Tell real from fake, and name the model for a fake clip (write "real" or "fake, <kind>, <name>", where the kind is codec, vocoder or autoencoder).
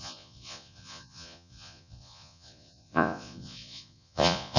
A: fake, vocoder, Vocos